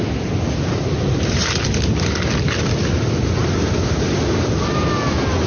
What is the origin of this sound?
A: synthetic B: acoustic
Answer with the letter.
B